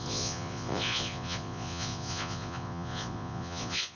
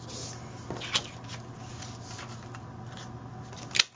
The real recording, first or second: second